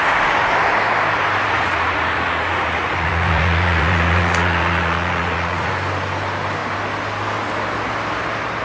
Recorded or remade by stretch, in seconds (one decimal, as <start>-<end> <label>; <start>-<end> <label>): 0.0-1.4 recorded; 1.4-5.7 remade; 5.7-8.6 recorded